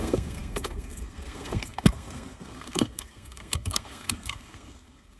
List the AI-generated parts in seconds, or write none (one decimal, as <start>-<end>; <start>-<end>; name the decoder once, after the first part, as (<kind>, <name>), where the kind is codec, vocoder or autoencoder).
0.0-5.2 (codec, SNAC)